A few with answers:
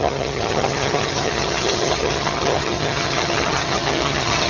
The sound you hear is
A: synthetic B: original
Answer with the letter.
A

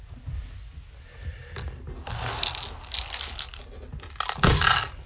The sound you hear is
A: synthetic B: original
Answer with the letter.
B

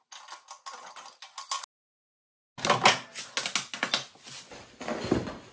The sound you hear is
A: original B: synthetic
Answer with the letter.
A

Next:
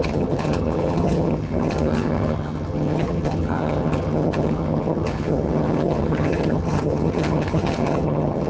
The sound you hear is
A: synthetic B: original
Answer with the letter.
A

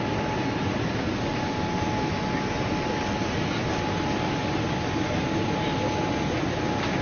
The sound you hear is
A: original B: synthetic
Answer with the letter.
A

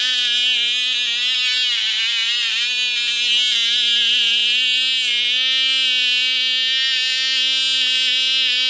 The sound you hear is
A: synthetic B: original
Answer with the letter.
B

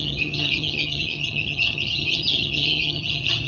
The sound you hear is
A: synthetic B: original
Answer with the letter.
A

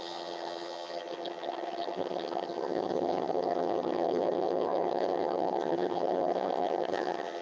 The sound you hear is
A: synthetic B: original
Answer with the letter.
A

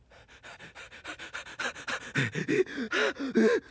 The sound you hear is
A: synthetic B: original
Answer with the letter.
B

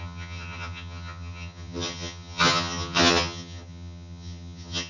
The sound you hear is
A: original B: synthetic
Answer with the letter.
B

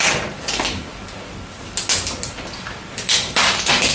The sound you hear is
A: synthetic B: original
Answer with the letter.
B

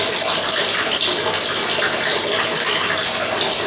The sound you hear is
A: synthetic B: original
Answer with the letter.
B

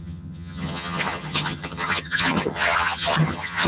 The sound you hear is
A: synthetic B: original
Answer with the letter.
A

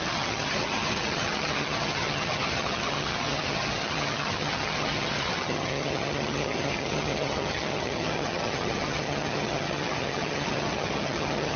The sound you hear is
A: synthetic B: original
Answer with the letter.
A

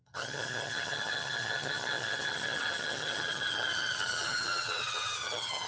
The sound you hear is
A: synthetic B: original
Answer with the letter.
A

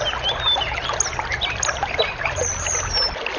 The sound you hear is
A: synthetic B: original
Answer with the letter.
B